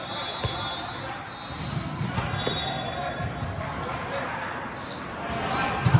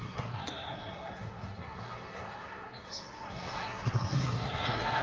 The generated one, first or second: second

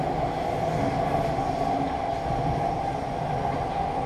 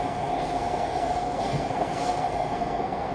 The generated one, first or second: second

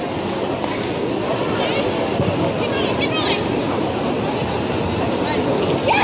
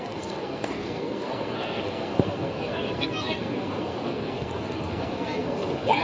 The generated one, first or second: second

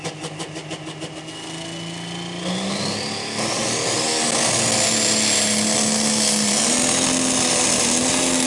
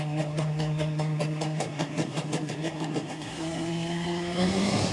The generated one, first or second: second